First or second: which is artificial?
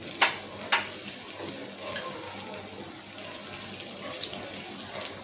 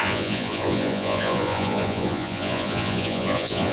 second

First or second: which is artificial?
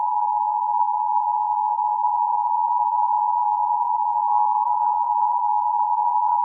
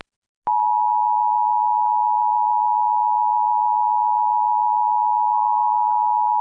first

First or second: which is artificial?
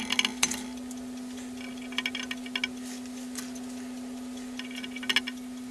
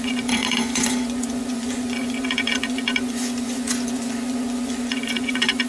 second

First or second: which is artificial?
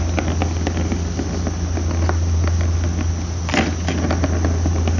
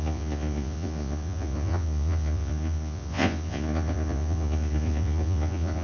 second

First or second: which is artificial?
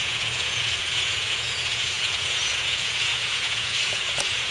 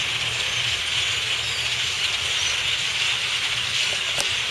first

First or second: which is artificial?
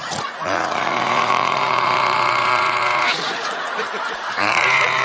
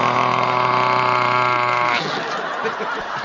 first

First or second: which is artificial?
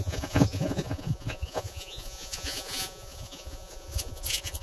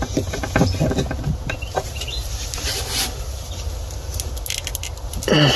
first